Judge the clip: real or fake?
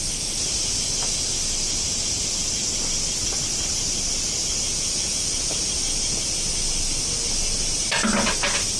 real